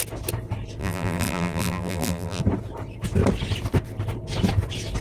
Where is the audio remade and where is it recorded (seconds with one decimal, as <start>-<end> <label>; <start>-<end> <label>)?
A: 0.0-0.8 recorded; 0.8-2.4 remade; 2.4-5.0 recorded

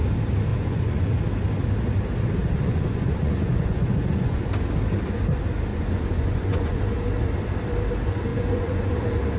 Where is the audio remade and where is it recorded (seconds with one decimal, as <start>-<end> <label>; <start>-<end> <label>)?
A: 0.0-0.5 recorded; 0.5-1.2 remade; 1.2-2.4 recorded; 2.4-4.5 remade; 4.5-5.7 recorded; 5.7-6.8 remade; 6.8-8.3 recorded; 8.3-8.9 remade; 8.9-9.4 recorded

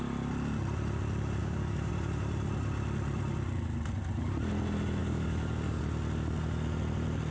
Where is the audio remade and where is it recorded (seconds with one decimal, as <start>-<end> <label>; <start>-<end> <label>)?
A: 0.0-1.4 recorded; 1.4-1.9 remade; 1.9-5.0 recorded; 5.0-5.8 remade; 5.8-7.3 recorded